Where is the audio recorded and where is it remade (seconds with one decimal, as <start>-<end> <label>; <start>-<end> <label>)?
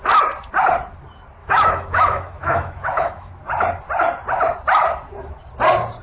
0.0-1.4 recorded; 1.4-3.3 remade; 3.3-6.0 recorded